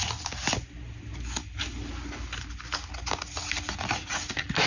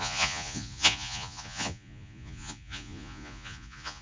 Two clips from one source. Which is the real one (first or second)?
first